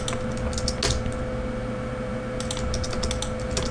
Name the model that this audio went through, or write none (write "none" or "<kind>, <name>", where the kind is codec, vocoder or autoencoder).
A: none